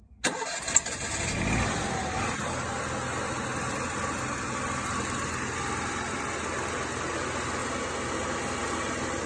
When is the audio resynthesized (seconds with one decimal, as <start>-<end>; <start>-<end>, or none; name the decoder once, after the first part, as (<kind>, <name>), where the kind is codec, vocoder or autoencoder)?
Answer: none